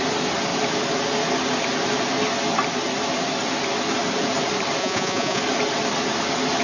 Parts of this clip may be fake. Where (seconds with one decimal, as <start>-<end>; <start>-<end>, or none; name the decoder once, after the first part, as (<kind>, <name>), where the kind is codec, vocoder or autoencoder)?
4.8-5.4 (vocoder, Vocos)